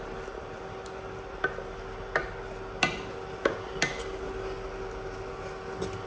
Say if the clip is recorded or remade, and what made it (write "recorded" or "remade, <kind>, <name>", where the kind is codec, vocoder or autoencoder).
recorded